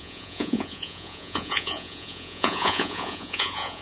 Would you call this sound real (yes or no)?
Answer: no